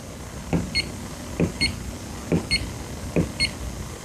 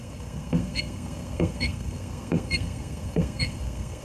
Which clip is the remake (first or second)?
second